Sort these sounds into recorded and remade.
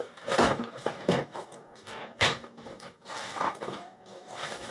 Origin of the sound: remade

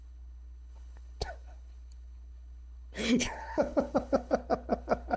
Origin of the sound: remade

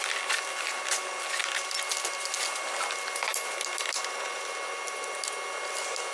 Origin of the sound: recorded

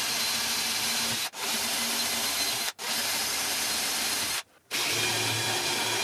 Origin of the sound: recorded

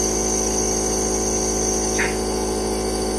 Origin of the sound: recorded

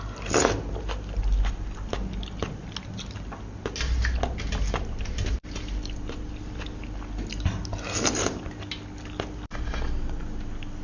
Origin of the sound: recorded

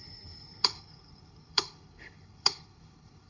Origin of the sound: remade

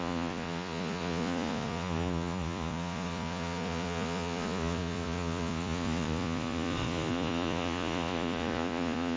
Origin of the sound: remade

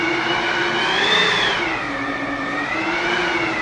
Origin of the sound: recorded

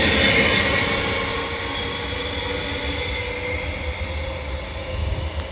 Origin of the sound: recorded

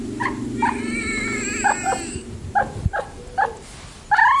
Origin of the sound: recorded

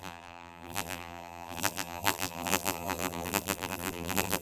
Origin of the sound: remade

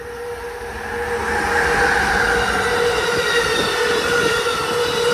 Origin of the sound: recorded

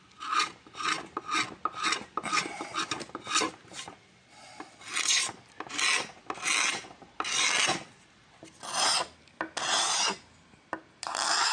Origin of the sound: recorded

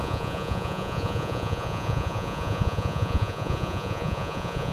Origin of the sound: remade